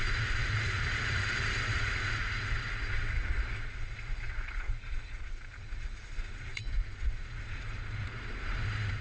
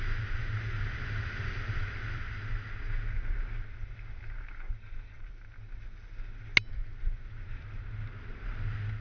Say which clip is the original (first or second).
second